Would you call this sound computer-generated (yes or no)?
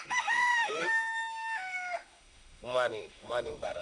yes